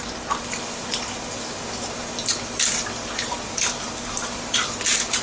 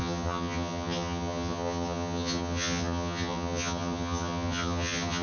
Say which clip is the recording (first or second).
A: first